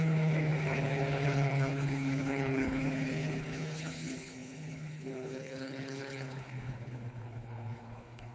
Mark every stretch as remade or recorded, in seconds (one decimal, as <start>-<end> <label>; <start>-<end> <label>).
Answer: 0.0-8.3 remade